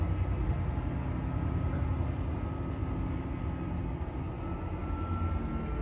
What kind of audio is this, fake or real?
real